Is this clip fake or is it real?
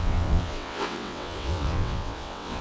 fake